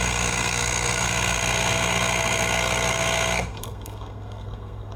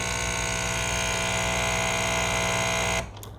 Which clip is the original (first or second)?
second